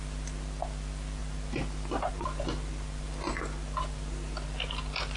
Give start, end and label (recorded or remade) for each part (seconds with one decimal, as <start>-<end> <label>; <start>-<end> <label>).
0.0-5.2 recorded